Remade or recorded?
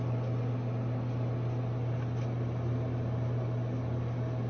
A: recorded